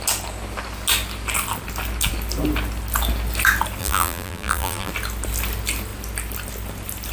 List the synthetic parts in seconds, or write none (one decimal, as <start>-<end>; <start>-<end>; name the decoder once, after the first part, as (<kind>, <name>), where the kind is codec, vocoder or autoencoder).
3.8-4.9 (vocoder, BigVGAN v2)